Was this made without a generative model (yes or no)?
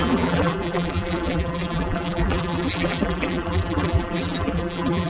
no